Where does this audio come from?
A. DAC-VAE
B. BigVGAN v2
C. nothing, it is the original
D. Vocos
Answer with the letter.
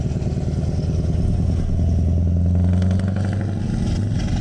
C